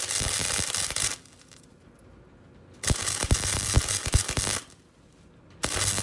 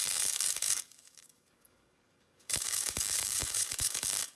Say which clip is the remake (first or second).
second